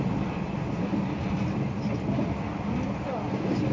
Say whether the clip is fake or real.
real